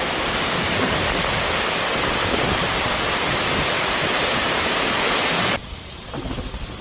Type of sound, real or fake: real